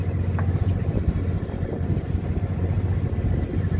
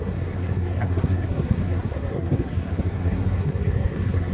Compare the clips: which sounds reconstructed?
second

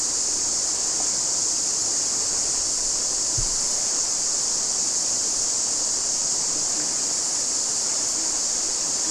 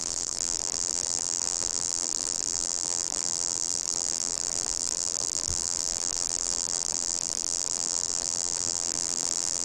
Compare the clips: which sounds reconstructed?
second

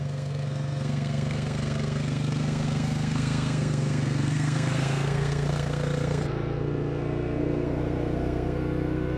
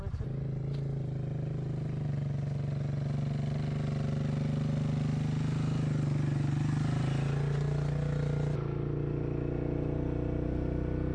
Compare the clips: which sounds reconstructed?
first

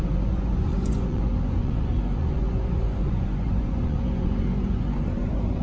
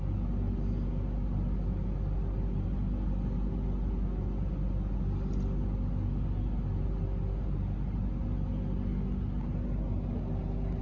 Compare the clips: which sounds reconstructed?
first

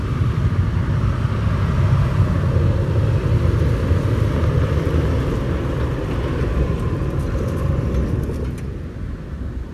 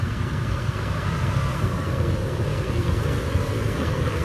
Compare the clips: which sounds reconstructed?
second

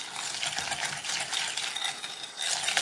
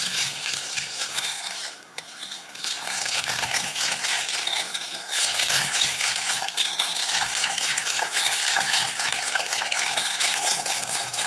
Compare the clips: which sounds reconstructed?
second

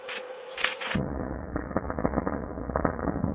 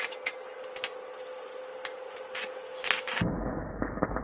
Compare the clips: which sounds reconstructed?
first